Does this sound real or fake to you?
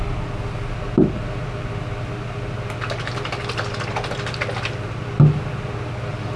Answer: real